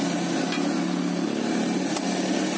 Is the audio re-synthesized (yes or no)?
no